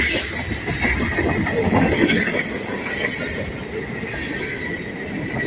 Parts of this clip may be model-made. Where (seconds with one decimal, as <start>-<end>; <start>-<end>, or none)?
1.6-3.1